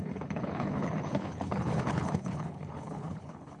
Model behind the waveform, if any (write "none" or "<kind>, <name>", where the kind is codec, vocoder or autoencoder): codec, HILCodec